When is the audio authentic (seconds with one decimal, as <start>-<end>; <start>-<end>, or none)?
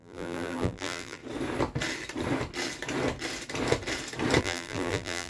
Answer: 1.2-4.4